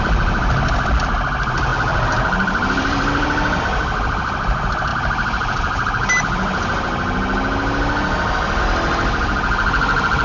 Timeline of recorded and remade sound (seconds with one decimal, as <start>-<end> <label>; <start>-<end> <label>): 0.0-1.7 recorded; 1.7-3.6 remade; 3.6-10.2 recorded